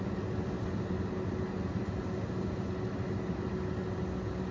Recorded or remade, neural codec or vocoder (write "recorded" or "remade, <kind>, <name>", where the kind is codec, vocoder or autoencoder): recorded